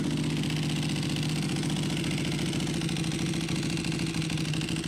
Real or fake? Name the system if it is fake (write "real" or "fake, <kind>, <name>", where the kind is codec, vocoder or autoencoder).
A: real